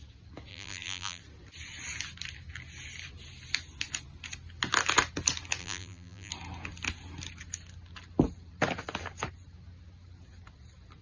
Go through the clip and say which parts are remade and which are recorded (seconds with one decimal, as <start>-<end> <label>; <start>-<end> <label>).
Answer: 0.0-0.5 recorded; 0.5-1.2 remade; 1.2-5.6 recorded; 5.6-6.3 remade; 6.3-11.0 recorded